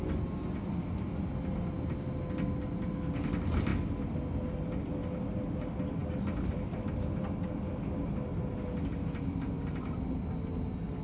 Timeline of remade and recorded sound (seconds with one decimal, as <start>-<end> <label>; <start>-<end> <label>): 0.0-6.0 recorded; 6.0-7.7 remade; 7.7-8.9 recorded; 8.9-10.2 remade; 10.2-11.0 recorded